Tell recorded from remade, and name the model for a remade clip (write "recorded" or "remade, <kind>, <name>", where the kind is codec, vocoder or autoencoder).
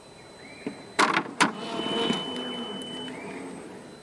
recorded